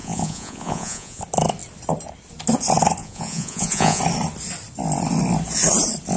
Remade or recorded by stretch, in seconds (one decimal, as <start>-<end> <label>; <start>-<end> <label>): 0.0-1.2 remade; 1.2-3.0 recorded; 3.0-4.0 remade; 4.0-6.2 recorded